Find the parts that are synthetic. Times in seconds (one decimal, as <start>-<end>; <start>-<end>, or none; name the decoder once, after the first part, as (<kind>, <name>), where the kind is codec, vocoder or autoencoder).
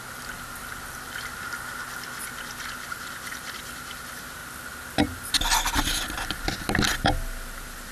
none